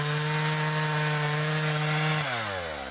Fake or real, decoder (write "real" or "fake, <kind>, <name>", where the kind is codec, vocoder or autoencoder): real